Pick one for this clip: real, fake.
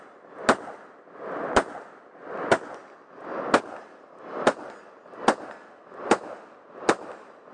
real